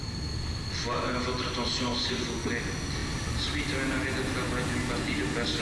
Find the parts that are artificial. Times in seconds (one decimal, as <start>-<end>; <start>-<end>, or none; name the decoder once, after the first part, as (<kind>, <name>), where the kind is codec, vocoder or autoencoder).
1.9-2.5 (vocoder, Vocos)